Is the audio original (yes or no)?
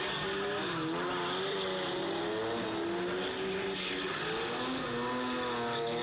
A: yes